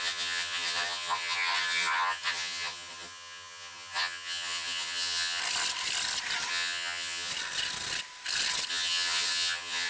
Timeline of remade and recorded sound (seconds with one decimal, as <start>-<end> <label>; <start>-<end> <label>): 0.0-5.4 remade; 5.4-6.5 recorded; 6.5-7.3 remade; 7.3-8.7 recorded; 8.7-9.9 remade